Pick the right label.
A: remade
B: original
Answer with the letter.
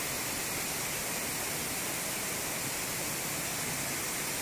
B